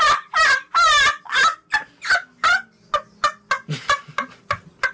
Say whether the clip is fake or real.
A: real